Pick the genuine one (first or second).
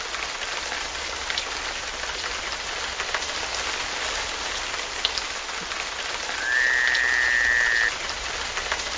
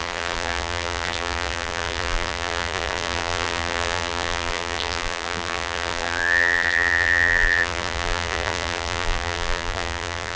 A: first